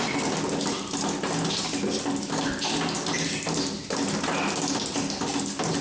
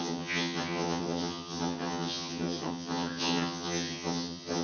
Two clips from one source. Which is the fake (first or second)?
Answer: second